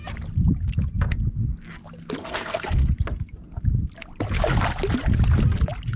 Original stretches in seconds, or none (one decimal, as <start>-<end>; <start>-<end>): 0.0-2.2; 2.9-6.0